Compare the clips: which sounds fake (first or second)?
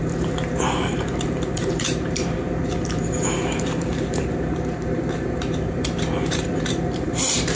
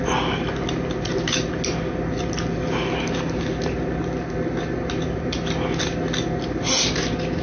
first